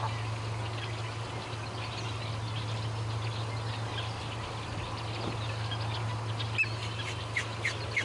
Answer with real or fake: real